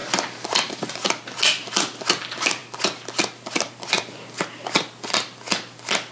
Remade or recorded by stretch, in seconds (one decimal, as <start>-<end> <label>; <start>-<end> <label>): 0.0-6.1 recorded